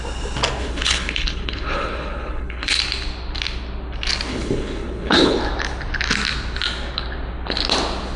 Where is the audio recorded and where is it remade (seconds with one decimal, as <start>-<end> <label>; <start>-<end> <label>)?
0.0-0.6 recorded; 0.6-2.8 remade; 2.8-4.3 recorded; 4.3-5.4 remade; 5.4-8.2 recorded